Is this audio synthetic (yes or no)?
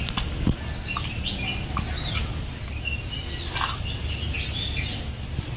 no